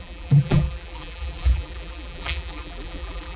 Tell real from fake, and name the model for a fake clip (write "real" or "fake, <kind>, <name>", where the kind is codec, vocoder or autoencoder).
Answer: fake, vocoder, BigVGAN v2